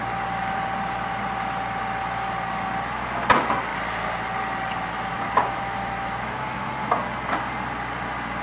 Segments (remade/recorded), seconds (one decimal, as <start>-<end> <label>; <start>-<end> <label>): 0.0-5.1 recorded; 5.1-6.7 remade; 6.7-8.4 recorded

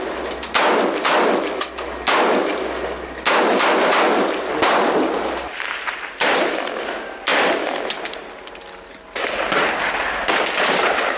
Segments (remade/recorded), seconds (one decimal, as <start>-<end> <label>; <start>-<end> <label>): 0.0-11.2 recorded

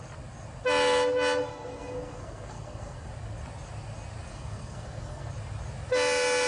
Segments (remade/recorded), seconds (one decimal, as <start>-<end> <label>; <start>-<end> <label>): 0.0-1.5 recorded; 1.5-3.1 remade; 3.1-4.3 recorded; 4.3-5.3 remade; 5.3-6.5 recorded

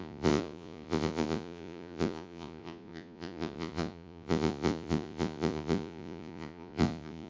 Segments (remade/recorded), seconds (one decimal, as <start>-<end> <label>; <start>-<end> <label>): 0.0-7.3 remade

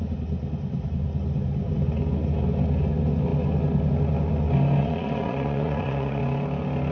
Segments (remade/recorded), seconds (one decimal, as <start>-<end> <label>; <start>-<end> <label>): 0.0-4.8 recorded; 4.8-6.2 remade; 6.2-6.9 recorded

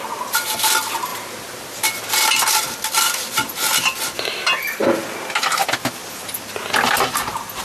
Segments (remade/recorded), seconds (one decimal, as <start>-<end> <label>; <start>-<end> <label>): 0.0-7.6 recorded